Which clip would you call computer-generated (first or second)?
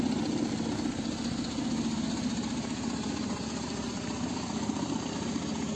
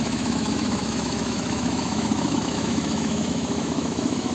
second